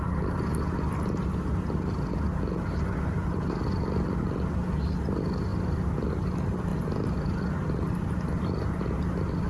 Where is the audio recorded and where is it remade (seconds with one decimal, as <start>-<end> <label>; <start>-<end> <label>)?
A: 0.0-9.5 recorded